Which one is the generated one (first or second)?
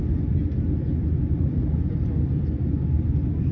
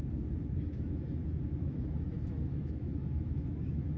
second